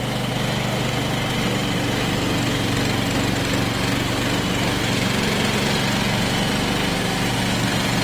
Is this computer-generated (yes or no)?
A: no